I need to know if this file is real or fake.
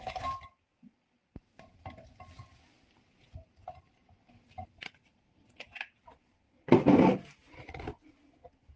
real